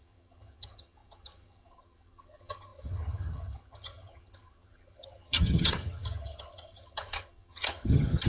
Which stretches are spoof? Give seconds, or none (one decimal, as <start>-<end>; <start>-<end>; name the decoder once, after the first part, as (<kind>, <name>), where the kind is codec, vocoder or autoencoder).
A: 0.0-8.3 (vocoder, HiFi-GAN)